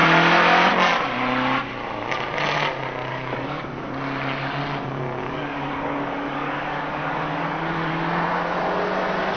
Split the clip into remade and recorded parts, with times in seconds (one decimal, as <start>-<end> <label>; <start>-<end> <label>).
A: 0.0-3.1 recorded; 3.1-3.9 remade; 3.9-5.2 recorded; 5.2-7.9 remade; 7.9-9.4 recorded